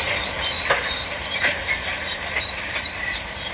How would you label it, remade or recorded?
remade